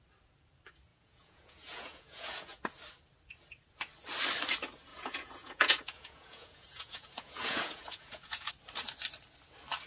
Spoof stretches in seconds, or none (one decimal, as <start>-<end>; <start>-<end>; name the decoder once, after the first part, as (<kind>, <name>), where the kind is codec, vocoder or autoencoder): 0.9-2.6 (vocoder, Vocos); 4.9-8.5